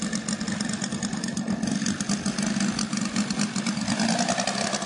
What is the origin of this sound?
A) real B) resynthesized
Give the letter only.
A